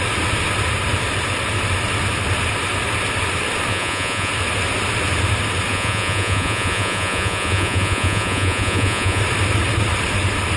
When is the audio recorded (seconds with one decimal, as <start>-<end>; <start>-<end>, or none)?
0.0-3.7; 4.3-5.7; 9.2-10.6